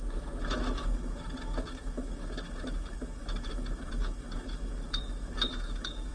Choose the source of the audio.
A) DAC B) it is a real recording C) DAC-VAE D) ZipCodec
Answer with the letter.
C